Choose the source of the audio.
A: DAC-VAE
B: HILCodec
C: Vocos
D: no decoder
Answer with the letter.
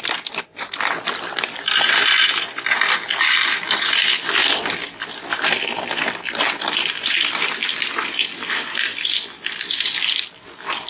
D